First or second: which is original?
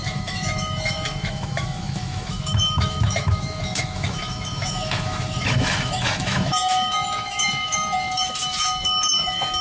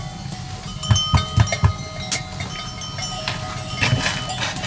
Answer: second